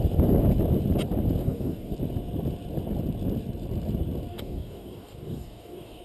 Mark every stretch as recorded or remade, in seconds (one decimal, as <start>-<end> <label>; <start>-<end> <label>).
0.0-1.4 recorded; 1.4-1.9 remade; 1.9-4.3 recorded; 4.3-6.0 remade